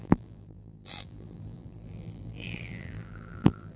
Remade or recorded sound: remade